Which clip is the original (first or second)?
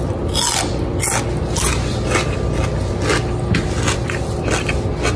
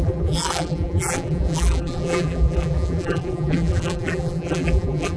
first